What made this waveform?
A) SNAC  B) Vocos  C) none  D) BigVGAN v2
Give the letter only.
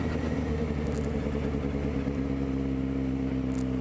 C